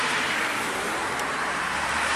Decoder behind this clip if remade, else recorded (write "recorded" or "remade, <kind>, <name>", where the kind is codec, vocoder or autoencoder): remade, vocoder, BigVGAN v2